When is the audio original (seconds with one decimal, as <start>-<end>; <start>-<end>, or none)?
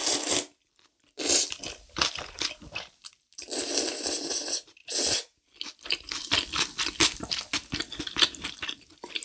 0.0-9.2